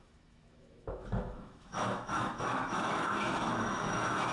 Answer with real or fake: fake